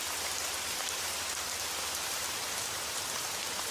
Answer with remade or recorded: remade